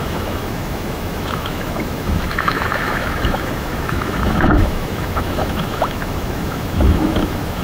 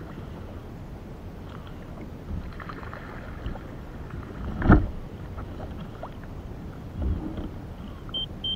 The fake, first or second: first